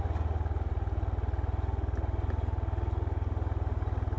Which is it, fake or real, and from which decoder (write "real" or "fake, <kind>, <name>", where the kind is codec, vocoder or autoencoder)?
real